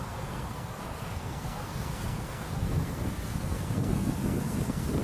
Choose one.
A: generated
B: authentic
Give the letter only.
A